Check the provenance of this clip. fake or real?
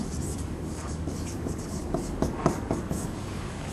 fake